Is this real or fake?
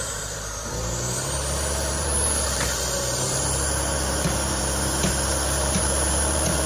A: fake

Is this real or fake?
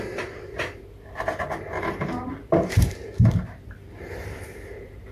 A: fake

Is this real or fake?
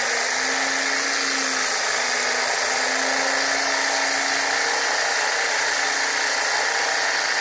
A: real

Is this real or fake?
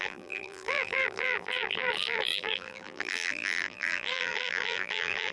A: fake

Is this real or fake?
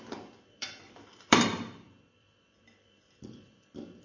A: fake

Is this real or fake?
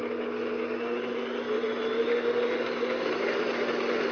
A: real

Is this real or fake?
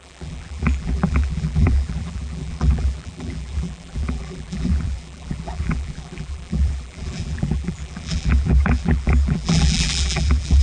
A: fake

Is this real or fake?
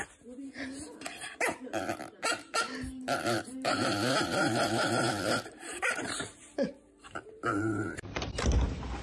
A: fake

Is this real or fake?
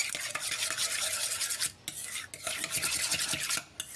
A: real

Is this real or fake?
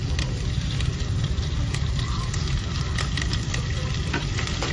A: fake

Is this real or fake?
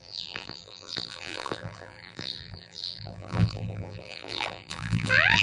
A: fake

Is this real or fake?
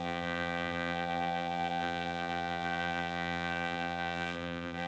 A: fake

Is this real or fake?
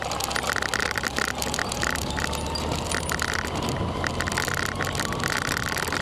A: real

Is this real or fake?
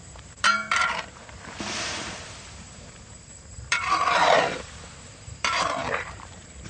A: fake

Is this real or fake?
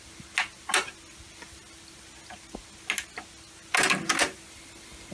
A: real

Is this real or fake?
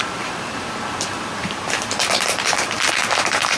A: fake